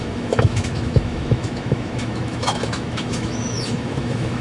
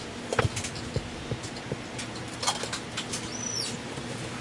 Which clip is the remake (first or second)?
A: first